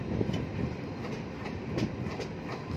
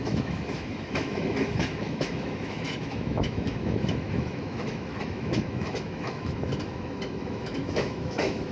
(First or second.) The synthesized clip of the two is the second